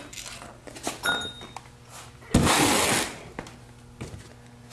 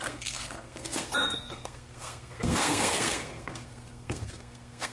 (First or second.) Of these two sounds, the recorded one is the first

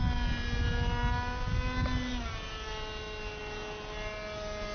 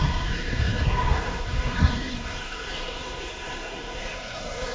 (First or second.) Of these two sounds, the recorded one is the first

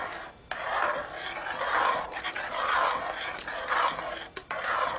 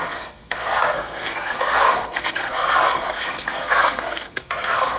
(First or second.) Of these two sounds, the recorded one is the first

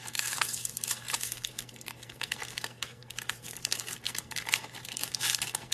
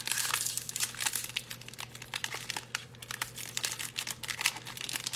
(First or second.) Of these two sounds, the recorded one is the second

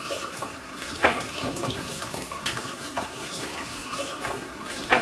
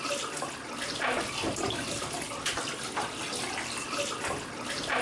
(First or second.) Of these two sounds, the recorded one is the second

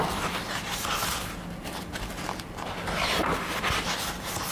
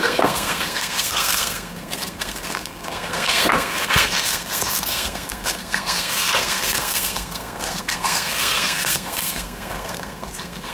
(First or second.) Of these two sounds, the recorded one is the first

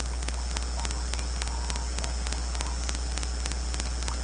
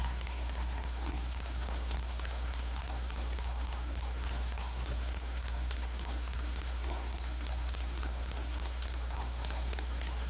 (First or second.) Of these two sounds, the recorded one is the first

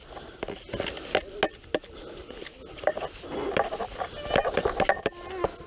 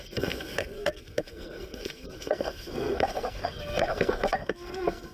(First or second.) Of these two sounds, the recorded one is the first